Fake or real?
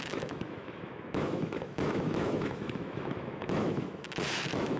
fake